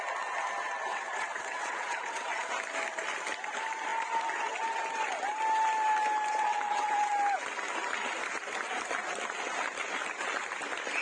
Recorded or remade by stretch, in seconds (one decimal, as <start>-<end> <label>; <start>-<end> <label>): 0.0-0.9 recorded; 0.9-2.5 remade; 2.5-6.3 recorded; 6.3-7.1 remade; 7.1-11.0 recorded